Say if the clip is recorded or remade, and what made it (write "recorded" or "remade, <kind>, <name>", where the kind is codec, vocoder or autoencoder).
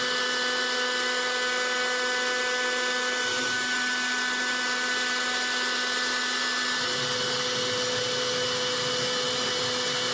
recorded